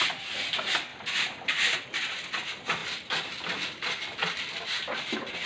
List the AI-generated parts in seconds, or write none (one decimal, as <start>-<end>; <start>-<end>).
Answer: none